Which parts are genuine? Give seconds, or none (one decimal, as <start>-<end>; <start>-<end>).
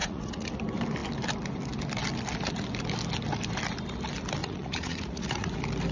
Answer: 0.5-4.4; 5.5-5.9